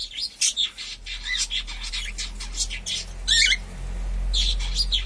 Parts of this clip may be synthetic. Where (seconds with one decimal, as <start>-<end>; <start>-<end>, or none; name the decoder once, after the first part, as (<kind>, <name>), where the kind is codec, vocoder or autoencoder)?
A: none